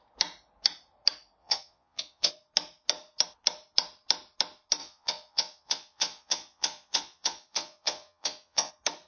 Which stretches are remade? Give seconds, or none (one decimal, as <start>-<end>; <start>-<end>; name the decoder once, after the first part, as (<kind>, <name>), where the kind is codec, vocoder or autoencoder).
1.4-2.3 (vocoder, Vocos); 4.8-8.7